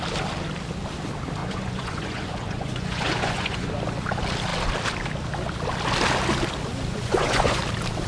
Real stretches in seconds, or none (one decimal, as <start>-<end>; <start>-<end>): 0.0-1.4; 3.7-6.9; 7.6-8.1